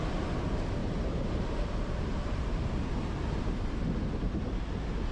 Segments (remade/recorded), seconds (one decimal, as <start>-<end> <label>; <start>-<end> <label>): 0.0-0.8 recorded; 0.8-3.6 remade; 3.6-5.1 recorded